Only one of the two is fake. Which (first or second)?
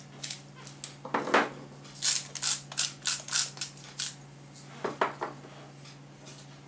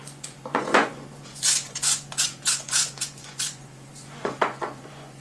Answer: second